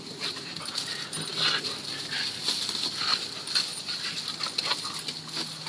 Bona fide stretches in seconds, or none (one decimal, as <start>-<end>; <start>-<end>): 0.0-5.7